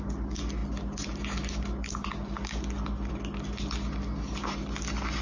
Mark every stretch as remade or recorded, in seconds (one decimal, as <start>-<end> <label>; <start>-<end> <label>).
0.0-5.2 recorded